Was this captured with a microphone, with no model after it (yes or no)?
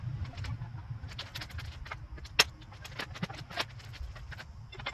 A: yes